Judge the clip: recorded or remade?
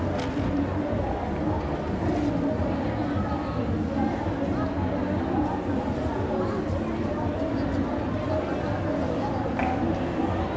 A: recorded